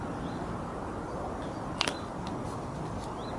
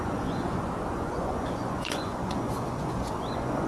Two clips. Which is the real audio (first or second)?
first